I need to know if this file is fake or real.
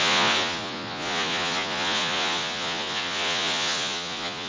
fake